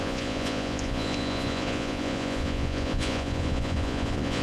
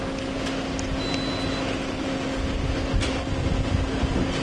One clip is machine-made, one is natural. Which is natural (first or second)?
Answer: second